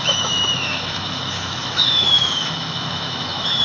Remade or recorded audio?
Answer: remade